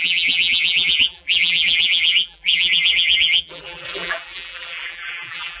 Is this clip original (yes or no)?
no